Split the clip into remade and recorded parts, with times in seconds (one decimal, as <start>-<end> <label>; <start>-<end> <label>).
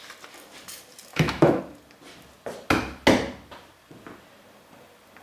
0.0-1.1 recorded; 1.1-1.6 remade; 1.6-5.2 recorded